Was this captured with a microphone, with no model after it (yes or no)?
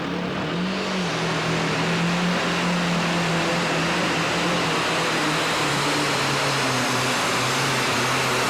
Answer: yes